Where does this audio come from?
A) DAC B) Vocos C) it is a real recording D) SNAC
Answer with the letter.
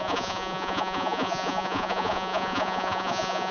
B